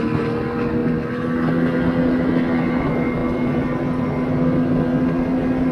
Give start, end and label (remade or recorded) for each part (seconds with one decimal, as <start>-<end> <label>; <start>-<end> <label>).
0.0-5.7 recorded

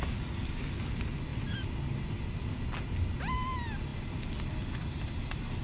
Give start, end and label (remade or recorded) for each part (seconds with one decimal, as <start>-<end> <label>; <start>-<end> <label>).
0.0-5.6 recorded

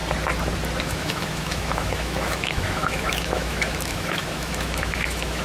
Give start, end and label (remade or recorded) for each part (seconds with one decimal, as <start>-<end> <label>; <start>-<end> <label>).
0.0-0.8 recorded; 0.8-5.4 remade

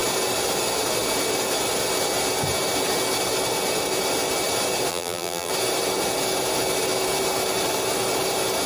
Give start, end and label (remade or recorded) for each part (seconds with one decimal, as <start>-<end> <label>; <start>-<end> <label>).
0.0-4.9 recorded; 4.9-5.5 remade; 5.5-8.7 recorded